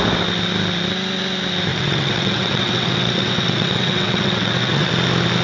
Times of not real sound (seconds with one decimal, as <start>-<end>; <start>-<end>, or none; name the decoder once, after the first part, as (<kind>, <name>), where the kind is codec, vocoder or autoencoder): 1.7-4.9 (vocoder, WaveNeXt)